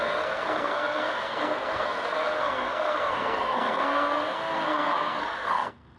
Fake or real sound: fake